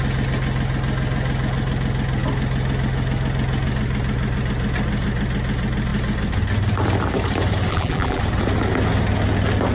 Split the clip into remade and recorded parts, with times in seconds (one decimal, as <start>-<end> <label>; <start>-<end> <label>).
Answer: 0.0-7.7 recorded; 7.7-8.2 remade; 8.2-9.7 recorded